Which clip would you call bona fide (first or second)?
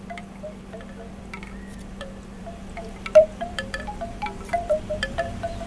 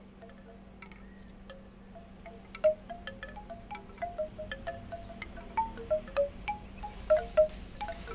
second